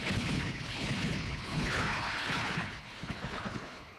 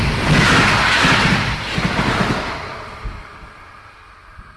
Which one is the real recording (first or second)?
second